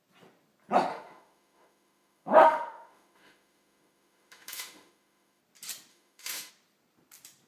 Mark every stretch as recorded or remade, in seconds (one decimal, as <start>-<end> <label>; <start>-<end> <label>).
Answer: 0.0-0.9 recorded; 0.9-5.4 remade; 5.4-5.9 recorded; 5.9-6.5 remade; 6.5-7.5 recorded